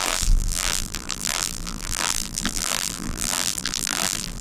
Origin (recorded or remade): remade